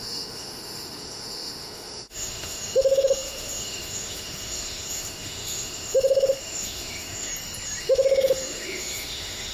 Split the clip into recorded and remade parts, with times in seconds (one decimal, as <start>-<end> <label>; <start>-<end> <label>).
0.0-7.3 remade; 7.3-7.8 recorded; 7.8-9.5 remade